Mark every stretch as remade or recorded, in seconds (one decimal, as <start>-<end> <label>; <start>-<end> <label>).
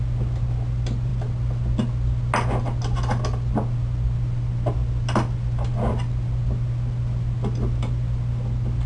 0.0-8.9 recorded